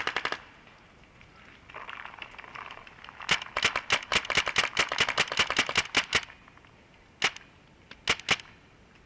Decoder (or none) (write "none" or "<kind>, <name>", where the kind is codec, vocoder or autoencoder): none